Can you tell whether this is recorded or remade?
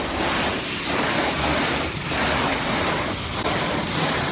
recorded